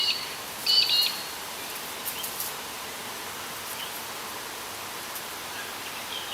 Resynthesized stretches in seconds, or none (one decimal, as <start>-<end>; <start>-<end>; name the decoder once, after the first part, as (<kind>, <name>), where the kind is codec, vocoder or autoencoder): none